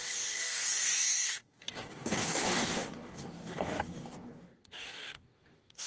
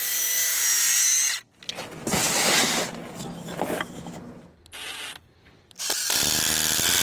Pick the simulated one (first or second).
first